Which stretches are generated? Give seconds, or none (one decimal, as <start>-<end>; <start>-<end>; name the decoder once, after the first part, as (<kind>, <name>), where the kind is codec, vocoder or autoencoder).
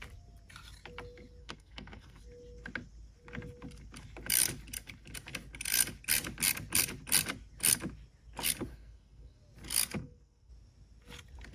1.4-2.2 (codec, SNAC); 8.7-9.4; 10.0-10.5